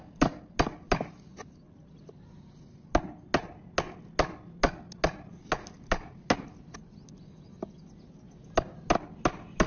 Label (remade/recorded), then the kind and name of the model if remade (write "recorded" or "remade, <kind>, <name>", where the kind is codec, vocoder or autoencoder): recorded